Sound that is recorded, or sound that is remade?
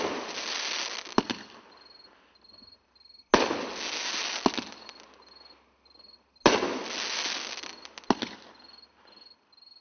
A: recorded